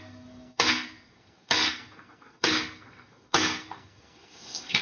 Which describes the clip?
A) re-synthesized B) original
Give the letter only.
A